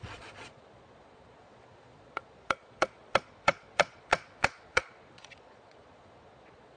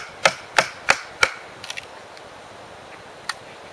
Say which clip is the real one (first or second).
second